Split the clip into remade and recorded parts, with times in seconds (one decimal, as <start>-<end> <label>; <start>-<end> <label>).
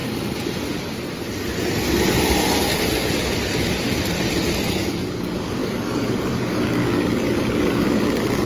0.0-4.7 recorded; 4.7-8.5 remade